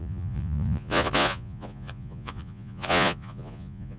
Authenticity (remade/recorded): remade